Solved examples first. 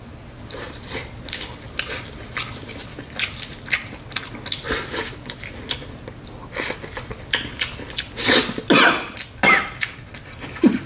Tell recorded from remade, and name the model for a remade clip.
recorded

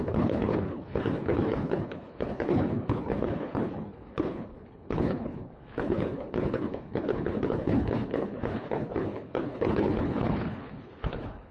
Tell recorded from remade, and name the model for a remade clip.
remade, codec, HILCodec